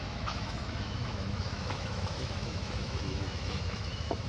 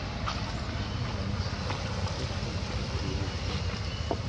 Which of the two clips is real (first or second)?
second